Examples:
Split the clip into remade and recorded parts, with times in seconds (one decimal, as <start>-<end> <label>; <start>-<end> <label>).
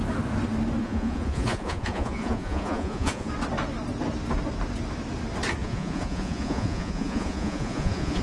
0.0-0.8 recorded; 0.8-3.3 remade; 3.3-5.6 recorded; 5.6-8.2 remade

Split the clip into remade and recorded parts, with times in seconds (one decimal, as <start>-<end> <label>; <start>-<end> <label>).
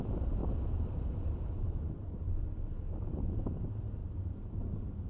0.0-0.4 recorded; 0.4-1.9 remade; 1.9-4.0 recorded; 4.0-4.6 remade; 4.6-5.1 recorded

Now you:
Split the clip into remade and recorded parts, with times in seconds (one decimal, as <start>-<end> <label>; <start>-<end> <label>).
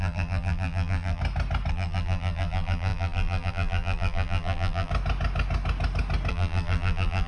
0.0-1.2 remade; 1.2-1.7 recorded; 1.7-4.9 remade; 4.9-6.3 recorded; 6.3-7.3 remade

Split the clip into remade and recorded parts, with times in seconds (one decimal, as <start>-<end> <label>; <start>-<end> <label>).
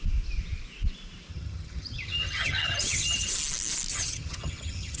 0.0-1.3 recorded; 1.3-3.3 remade; 3.3-3.9 recorded; 3.9-5.0 remade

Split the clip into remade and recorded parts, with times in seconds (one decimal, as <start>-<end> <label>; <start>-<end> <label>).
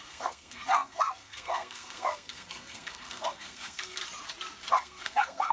0.0-4.0 remade; 4.0-4.7 recorded; 4.7-5.5 remade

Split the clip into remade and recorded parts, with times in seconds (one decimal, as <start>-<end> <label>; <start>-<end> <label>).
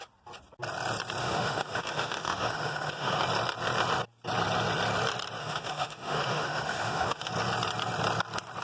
0.0-1.2 recorded; 1.2-3.2 remade; 3.2-5.4 recorded; 5.4-7.3 remade; 7.3-8.6 recorded